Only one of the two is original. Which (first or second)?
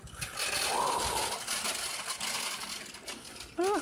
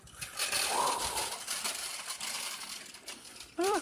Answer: first